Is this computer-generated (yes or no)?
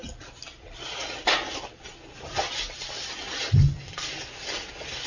no